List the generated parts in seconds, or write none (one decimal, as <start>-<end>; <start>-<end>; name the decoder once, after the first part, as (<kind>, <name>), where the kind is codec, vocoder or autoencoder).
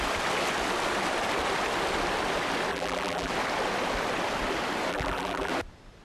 2.7-3.3 (vocoder, BigVGAN v2); 4.9-5.5